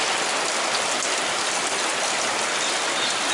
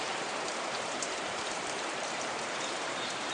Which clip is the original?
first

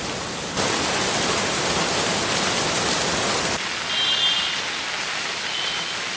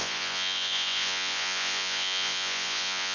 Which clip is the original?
first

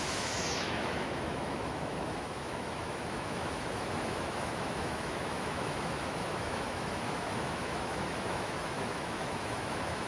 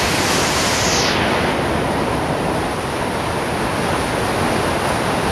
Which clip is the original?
second